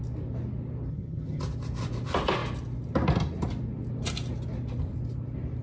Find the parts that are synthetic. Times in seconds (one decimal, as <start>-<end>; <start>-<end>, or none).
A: 0.9-1.4